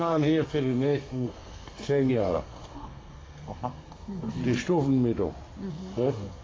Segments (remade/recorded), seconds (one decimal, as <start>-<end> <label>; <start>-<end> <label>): 0.0-4.4 remade; 4.4-5.7 recorded; 5.7-6.4 remade